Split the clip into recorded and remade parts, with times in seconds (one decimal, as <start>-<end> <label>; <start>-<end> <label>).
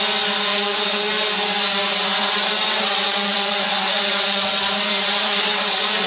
0.0-0.5 recorded; 0.5-1.1 remade; 1.1-2.2 recorded; 2.2-6.1 remade